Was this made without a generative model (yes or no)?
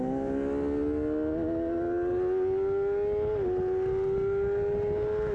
yes